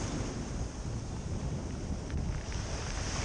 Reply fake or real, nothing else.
real